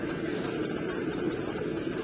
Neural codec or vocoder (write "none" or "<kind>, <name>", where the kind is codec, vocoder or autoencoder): vocoder, BigVGAN v2